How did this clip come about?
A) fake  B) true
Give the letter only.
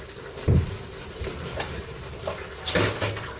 B